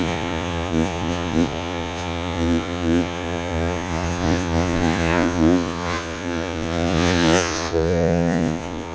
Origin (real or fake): fake